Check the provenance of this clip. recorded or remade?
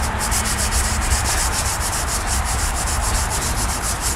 remade